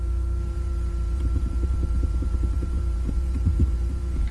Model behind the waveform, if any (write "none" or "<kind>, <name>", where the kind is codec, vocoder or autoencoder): vocoder, BigVGAN v2